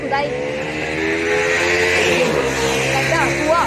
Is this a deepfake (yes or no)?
no